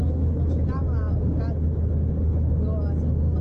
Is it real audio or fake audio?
real